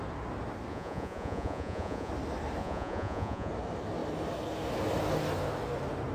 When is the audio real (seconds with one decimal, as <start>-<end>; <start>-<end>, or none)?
0.0-0.7; 2.1-2.6; 3.5-6.1